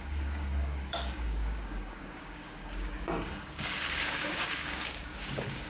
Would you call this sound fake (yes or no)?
yes